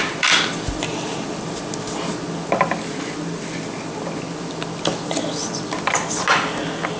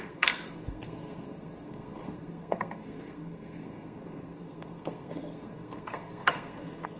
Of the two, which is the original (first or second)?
first